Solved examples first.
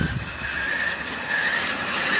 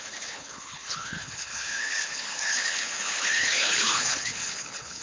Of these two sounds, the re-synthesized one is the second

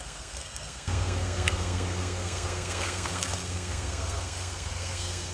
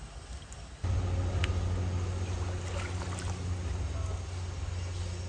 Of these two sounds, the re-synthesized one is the first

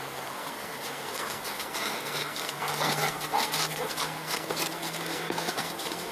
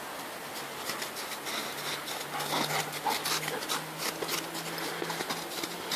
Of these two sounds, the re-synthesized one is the first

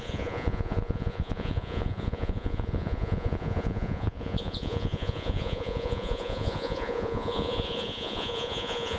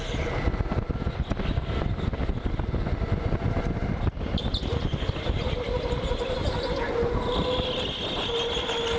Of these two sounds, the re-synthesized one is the first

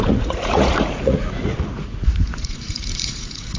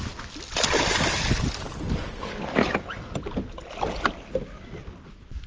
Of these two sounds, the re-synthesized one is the first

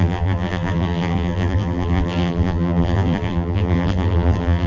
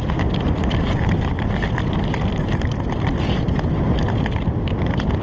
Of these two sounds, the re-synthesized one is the first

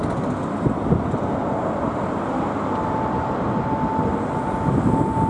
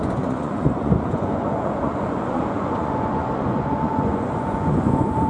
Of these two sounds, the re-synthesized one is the second